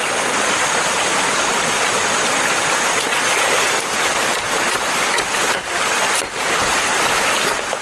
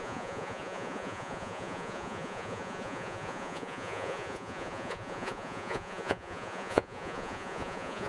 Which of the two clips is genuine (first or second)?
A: first